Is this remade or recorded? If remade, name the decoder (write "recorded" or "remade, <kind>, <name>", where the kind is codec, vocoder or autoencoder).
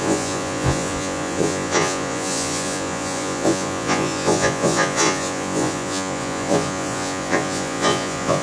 remade, vocoder, Vocos